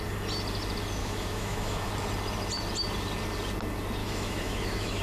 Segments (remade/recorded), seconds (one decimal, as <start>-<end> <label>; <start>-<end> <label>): 0.0-1.0 recorded; 1.0-1.9 remade; 1.9-4.0 recorded; 4.0-5.0 remade